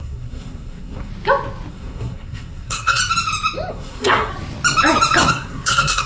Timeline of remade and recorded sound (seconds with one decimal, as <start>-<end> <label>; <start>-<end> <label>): 0.0-1.1 remade; 1.1-1.7 recorded; 1.7-3.0 remade; 3.0-3.7 recorded; 3.7-4.3 remade; 4.3-5.3 recorded; 5.3-6.1 remade